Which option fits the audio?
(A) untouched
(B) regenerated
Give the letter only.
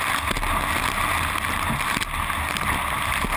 A